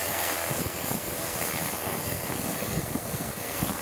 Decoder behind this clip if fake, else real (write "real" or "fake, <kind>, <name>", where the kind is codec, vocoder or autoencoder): fake, codec, SNAC